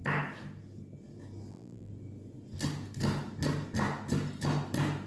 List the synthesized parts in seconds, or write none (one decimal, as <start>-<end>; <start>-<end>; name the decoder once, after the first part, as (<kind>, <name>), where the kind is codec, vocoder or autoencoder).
1.5-1.9 (vocoder, BigVGAN v2)